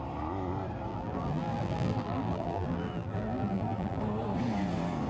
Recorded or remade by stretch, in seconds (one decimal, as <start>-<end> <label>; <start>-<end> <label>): 0.0-0.9 recorded; 0.9-4.0 remade; 4.0-5.1 recorded